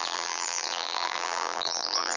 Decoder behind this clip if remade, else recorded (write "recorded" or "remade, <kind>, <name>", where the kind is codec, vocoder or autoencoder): remade, vocoder, BigVGAN v2